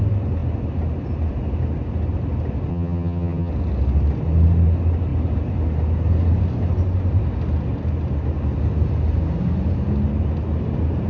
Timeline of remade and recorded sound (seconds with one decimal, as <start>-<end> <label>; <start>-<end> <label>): 0.0-2.7 recorded; 2.7-3.5 remade; 3.5-11.1 recorded